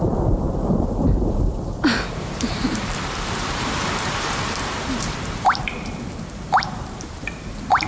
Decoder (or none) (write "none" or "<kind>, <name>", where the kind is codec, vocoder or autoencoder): vocoder, BigVGAN v2